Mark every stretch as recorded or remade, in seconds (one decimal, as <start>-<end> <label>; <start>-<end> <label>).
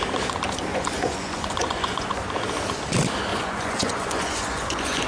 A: 0.0-0.7 recorded; 0.7-2.2 remade; 2.2-3.3 recorded; 3.3-5.1 remade